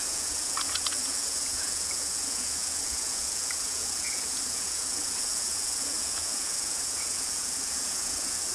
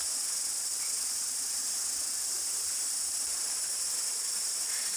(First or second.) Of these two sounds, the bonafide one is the second